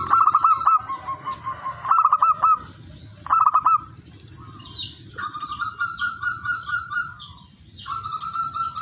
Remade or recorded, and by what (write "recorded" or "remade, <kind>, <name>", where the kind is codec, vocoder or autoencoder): recorded